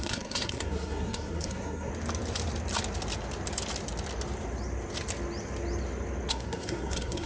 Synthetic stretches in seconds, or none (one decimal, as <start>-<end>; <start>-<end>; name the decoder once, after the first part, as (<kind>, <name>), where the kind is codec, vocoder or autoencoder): 0.0-1.9 (codec, SNAC); 6.3-7.3